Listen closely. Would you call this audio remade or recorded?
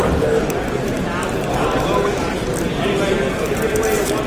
recorded